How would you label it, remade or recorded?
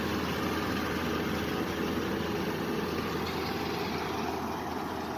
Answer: recorded